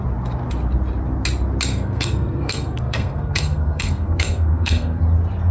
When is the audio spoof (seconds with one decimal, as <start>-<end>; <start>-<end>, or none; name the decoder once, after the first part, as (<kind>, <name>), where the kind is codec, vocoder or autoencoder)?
1.7-5.0 (codec, SNAC)